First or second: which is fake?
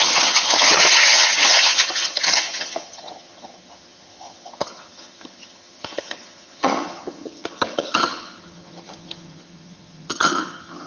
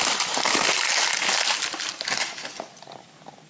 first